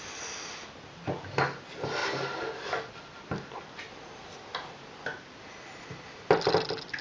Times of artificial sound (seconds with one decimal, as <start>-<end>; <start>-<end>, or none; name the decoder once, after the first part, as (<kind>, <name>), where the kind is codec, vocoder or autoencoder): none